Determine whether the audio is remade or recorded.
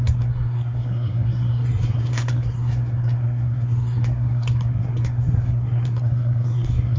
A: remade